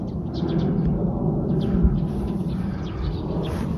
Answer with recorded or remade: recorded